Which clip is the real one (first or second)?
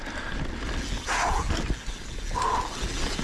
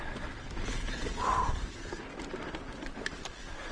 first